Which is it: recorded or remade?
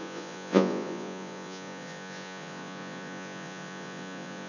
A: remade